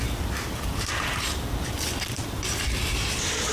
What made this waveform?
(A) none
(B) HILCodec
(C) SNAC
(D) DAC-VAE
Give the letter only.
A